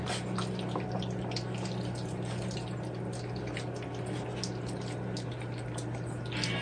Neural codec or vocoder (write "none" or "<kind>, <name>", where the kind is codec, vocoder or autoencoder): none